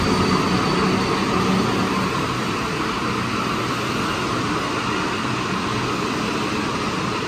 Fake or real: real